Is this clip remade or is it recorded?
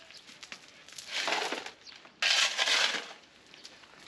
recorded